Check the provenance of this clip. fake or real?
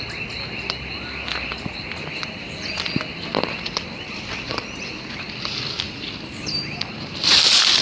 real